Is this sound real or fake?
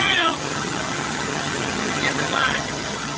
fake